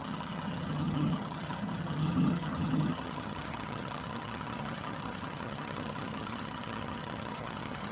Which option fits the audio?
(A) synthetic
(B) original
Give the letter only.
A